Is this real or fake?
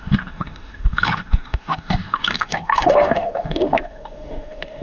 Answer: fake